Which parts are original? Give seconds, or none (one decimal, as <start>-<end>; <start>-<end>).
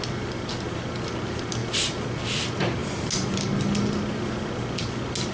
0.0-5.3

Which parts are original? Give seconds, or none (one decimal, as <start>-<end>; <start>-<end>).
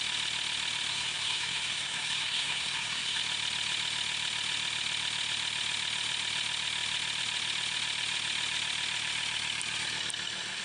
0.0-0.9; 3.2-10.6